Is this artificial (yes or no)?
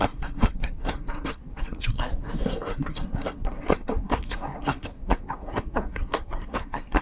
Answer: yes